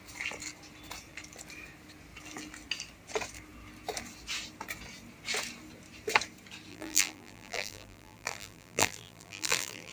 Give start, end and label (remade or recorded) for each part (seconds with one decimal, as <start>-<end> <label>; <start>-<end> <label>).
0.0-6.7 recorded; 6.7-9.9 remade

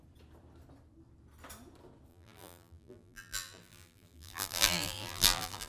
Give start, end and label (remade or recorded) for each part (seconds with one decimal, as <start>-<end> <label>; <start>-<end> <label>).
0.0-2.1 recorded; 2.1-5.7 remade